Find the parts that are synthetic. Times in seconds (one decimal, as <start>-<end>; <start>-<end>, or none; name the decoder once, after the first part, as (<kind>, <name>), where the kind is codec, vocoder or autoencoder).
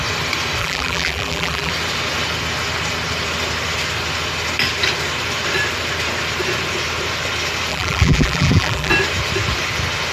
0.6-1.7 (vocoder, BigVGAN v2); 7.7-8.9